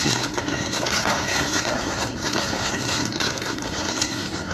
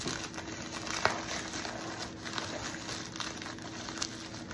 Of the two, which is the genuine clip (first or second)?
second